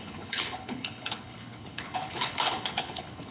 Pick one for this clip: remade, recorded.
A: remade